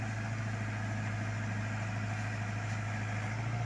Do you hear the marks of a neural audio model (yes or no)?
no